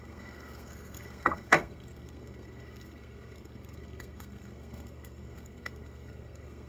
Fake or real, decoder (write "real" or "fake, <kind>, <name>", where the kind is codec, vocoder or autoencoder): fake, codec, SNAC